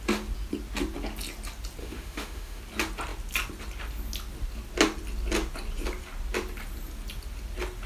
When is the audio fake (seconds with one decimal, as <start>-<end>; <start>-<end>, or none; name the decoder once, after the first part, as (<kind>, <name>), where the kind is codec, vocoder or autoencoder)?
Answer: 1.8-2.6 (autoencoder, DAC-VAE)